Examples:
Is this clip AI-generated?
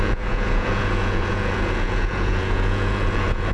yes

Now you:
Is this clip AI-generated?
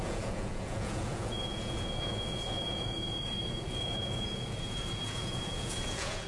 yes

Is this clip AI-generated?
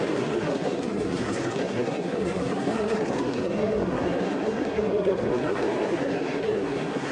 yes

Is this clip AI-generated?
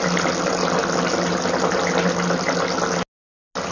no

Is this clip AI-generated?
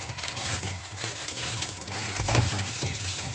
yes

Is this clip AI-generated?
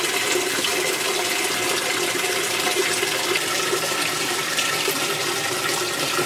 no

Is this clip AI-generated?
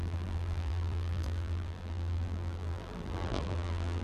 yes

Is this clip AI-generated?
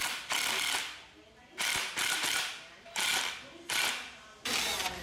no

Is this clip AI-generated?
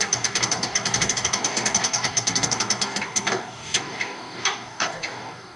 yes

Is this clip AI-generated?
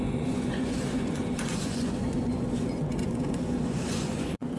yes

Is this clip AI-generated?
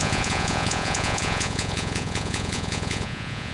yes